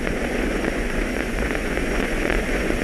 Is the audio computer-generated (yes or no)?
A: yes